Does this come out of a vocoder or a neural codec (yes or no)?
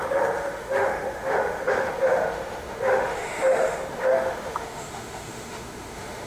yes